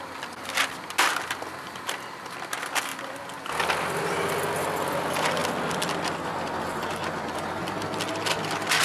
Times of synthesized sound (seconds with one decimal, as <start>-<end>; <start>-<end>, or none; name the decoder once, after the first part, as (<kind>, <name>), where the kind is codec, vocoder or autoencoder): none